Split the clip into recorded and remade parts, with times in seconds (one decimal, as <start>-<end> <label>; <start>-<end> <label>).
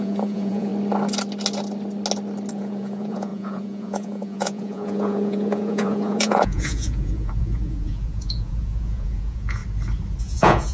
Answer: 0.0-0.7 remade; 0.7-2.5 recorded; 2.5-9.6 remade; 9.6-10.2 recorded; 10.2-10.7 remade